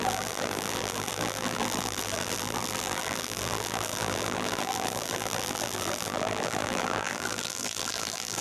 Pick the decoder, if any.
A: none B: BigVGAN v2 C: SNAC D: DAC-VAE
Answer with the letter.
B